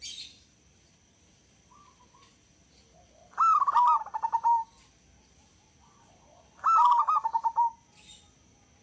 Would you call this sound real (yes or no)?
yes